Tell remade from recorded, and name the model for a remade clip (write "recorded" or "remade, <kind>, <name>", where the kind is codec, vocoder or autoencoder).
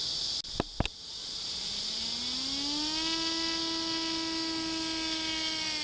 recorded